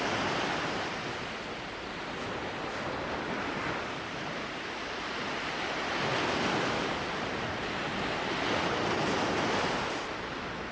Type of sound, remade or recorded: recorded